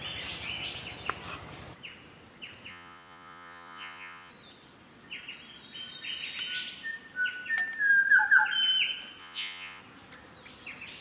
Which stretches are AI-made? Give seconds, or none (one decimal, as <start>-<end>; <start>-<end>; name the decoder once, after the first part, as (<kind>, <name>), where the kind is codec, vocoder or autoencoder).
2.7-4.3 (vocoder, Vocos); 9.2-9.8